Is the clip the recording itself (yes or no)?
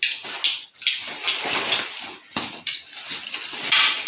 yes